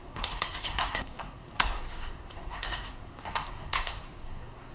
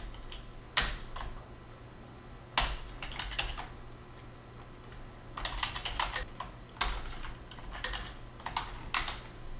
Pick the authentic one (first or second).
second